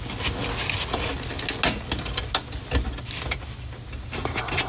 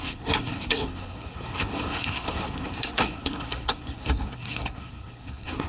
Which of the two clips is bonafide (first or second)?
first